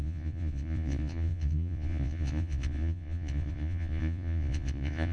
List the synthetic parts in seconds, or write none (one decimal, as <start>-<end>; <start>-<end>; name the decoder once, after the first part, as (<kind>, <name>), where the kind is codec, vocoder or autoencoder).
0.0-5.1 (vocoder, Vocos)